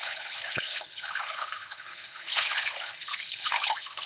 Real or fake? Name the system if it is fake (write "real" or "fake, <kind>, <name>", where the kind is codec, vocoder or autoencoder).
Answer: fake, codec, HILCodec